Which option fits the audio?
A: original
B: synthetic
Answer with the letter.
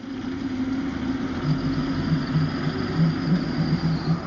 A